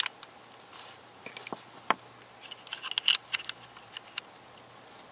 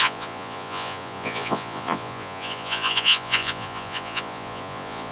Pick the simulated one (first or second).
second